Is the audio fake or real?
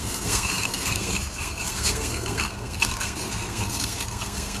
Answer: fake